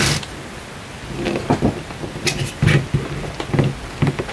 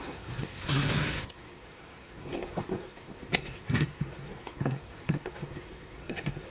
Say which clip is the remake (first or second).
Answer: second